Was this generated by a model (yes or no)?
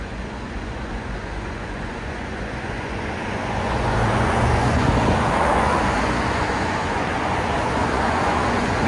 yes